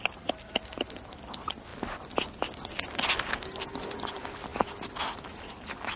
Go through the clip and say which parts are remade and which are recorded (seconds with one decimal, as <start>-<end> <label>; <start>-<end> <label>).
0.0-6.0 recorded